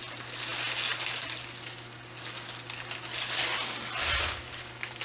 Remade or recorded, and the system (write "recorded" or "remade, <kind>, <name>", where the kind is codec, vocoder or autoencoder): recorded